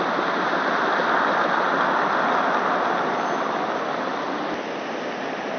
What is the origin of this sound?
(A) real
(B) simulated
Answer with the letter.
A